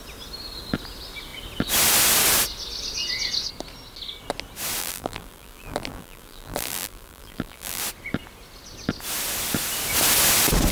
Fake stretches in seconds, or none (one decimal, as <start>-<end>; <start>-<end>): 4.8-7.8